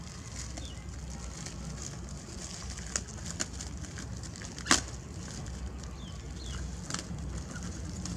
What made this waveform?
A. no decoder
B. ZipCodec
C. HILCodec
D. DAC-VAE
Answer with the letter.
A